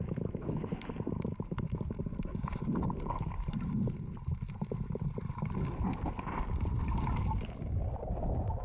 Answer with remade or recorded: recorded